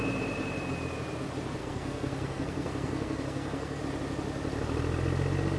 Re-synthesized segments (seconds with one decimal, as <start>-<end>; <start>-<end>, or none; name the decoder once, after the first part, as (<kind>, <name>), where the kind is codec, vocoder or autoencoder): 1.6-3.8 (codec, SNAC)